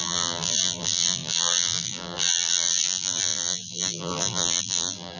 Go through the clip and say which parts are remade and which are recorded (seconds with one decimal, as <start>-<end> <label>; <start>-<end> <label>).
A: 0.0-5.2 remade